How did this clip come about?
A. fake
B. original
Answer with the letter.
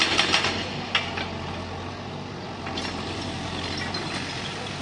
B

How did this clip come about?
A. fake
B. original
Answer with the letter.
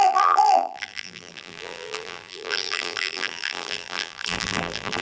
A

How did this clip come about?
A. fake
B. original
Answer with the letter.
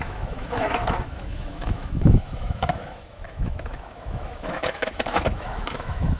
A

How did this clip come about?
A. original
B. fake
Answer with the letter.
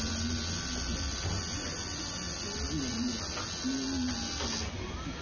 A